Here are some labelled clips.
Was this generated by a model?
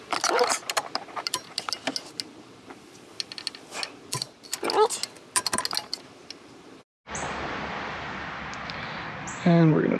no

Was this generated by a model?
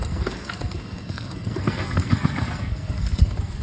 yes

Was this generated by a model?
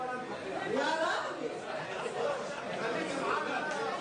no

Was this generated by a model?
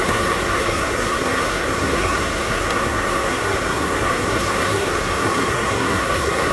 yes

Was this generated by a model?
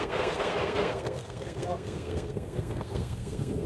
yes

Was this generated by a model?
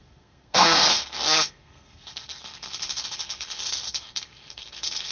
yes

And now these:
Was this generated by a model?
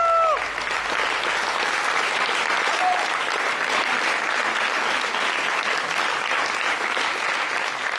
no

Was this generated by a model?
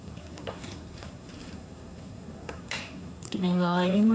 yes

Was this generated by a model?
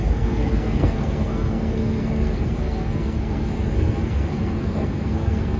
yes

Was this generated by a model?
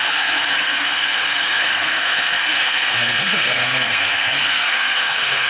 yes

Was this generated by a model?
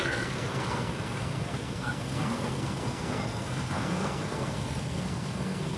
yes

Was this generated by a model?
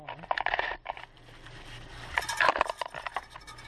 no